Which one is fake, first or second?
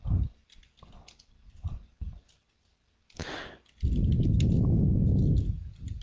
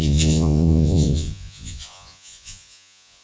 second